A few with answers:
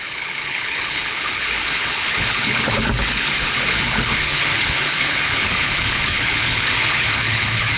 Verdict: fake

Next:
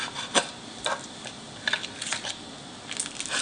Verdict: real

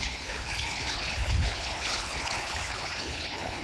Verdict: fake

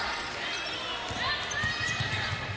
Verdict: real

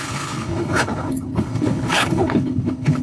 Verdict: fake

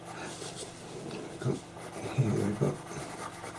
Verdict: real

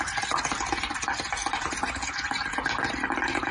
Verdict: real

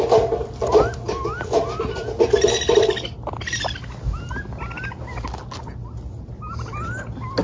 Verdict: real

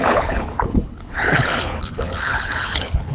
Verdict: fake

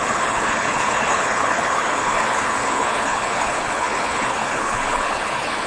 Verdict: fake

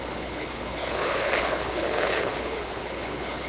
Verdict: fake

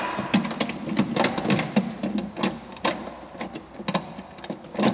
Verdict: real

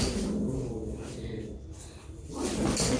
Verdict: real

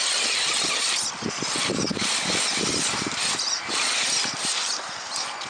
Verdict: real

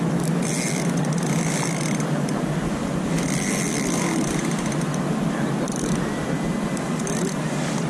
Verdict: real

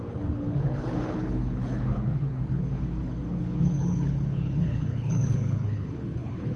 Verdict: fake